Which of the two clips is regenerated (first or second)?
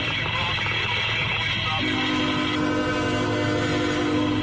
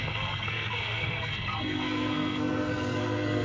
second